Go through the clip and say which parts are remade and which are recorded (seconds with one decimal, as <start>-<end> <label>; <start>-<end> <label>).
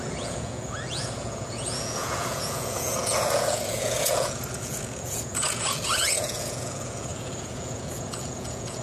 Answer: 0.0-8.8 remade